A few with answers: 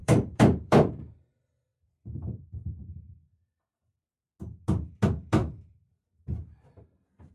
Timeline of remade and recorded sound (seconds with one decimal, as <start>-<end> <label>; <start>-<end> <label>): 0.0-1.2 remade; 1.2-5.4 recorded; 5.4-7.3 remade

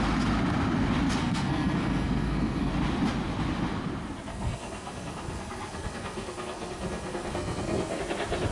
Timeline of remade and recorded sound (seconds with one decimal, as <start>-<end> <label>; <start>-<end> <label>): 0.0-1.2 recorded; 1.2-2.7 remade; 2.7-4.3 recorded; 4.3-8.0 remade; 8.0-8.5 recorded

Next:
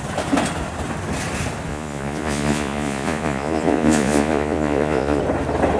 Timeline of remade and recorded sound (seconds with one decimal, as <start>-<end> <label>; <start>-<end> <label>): 0.0-1.7 recorded; 1.7-5.2 remade; 5.2-5.8 recorded

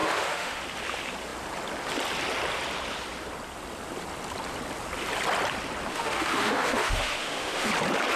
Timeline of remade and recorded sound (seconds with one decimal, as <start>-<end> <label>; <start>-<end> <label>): 0.0-0.6 remade; 0.6-5.9 recorded; 5.9-7.7 remade; 7.7-8.2 recorded